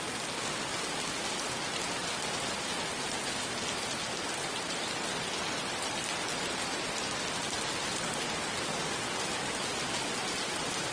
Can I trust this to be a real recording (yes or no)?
yes